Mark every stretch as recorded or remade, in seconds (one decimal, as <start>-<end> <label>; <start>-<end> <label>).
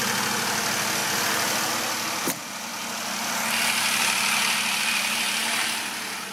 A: 0.0-6.3 recorded